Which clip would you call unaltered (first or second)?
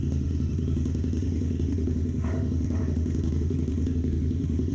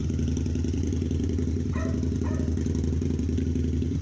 second